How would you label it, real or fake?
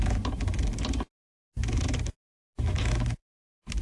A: real